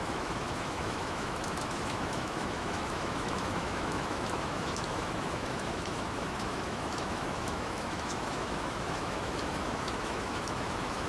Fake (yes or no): yes